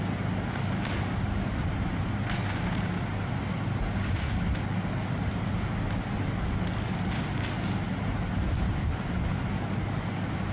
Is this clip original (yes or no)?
yes